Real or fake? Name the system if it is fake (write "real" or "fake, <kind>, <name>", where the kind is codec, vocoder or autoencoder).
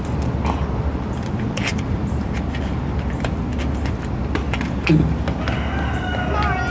real